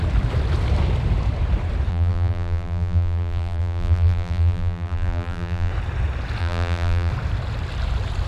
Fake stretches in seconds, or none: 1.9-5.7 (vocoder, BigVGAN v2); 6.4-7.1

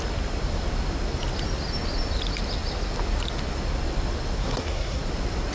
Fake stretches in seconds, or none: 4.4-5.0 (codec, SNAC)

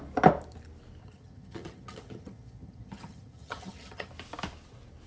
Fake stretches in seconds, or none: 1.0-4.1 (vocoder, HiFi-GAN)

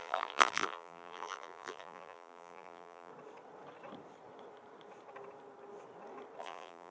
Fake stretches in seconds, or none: 0.0-3.1 (vocoder, BigVGAN v2); 6.4-6.9

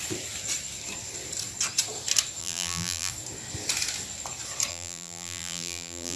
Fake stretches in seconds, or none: 2.4-3.1 (vocoder, BigVGAN v2); 4.7-6.2

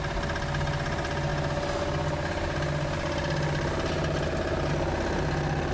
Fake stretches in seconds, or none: none